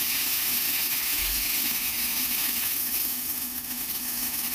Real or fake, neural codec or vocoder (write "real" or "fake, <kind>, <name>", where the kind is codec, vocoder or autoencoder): fake, autoencoder, DAC-VAE